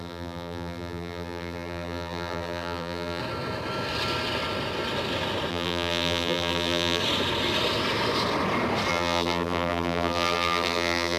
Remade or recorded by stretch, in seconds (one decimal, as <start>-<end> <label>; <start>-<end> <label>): 0.0-3.2 remade; 3.2-5.5 recorded; 5.5-7.0 remade; 7.0-8.9 recorded; 8.9-11.2 remade